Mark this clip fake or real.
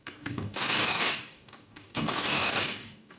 fake